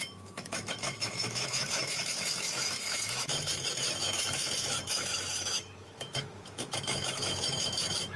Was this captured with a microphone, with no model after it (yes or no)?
no